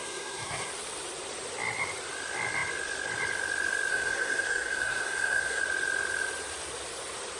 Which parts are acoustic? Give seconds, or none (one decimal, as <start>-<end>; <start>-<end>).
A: 0.7-3.9; 5.6-7.4